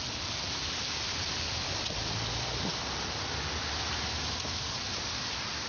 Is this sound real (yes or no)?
yes